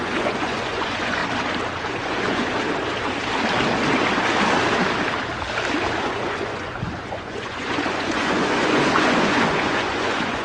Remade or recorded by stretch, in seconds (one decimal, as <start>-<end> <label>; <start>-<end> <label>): 0.0-1.2 remade; 1.2-1.9 recorded; 1.9-2.5 remade; 2.5-6.0 recorded; 6.0-10.4 remade